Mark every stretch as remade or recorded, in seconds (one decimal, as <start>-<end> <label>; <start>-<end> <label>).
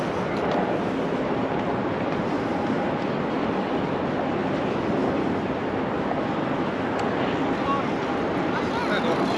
0.0-9.4 recorded